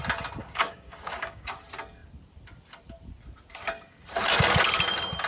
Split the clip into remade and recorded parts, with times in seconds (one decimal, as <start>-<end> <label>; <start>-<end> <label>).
0.0-0.4 recorded; 0.4-1.6 remade; 1.6-5.3 recorded